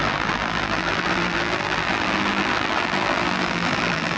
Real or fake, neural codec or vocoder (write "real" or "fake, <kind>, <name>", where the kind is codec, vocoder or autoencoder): fake, vocoder, BigVGAN v2